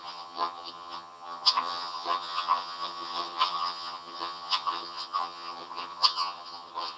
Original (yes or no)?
no